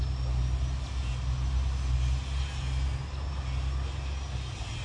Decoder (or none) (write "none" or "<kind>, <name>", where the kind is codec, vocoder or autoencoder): none